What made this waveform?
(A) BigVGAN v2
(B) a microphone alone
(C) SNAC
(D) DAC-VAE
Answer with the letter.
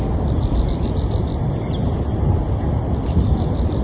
B